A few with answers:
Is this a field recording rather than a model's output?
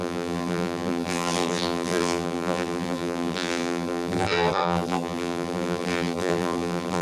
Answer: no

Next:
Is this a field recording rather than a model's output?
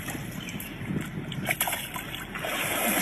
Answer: yes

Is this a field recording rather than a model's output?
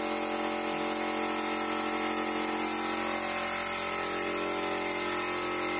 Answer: yes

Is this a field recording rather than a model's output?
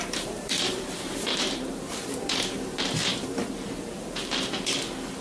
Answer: no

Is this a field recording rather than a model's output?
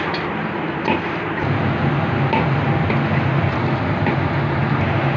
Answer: yes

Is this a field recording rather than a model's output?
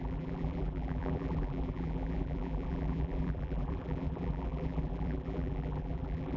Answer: no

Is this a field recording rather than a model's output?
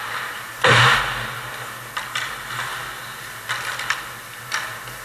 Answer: yes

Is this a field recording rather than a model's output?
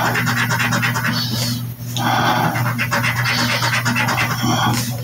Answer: yes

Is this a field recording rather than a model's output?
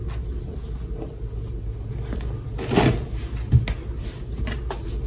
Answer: yes